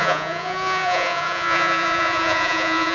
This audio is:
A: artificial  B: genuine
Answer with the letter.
A